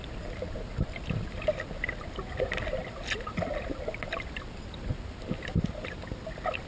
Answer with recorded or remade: recorded